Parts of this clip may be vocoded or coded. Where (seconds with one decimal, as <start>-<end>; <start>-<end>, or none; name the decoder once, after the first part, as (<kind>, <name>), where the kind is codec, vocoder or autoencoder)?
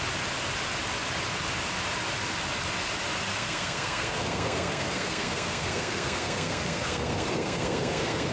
3.3-8.3 (codec, SNAC)